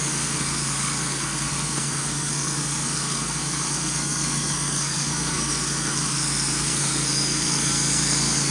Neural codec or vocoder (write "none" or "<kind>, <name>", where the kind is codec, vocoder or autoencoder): codec, SNAC